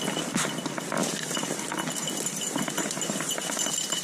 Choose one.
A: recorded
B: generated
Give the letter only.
A